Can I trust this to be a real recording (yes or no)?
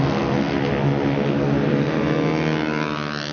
yes